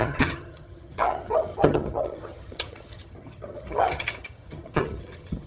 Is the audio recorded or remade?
remade